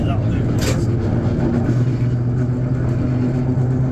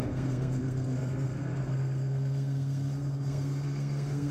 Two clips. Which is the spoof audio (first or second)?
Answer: second